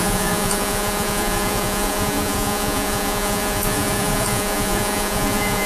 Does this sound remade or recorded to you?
remade